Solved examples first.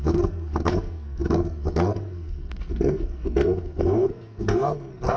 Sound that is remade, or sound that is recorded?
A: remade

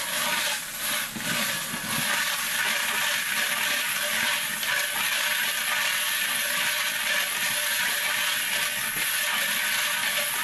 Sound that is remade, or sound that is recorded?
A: recorded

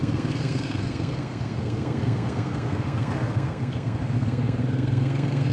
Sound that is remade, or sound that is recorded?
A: remade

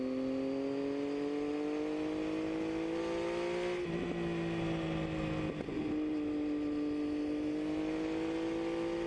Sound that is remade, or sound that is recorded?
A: recorded